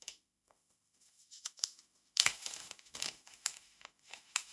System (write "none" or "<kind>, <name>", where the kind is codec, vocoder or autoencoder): autoencoder, DAC-VAE